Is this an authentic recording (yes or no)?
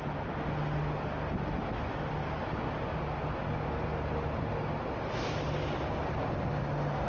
yes